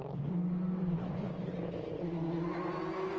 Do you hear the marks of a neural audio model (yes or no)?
no